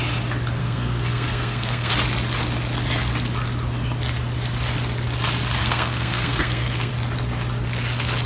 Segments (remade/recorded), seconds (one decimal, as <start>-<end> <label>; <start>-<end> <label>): 0.0-0.6 recorded; 0.6-1.9 remade; 1.9-5.6 recorded; 5.6-6.9 remade; 6.9-8.3 recorded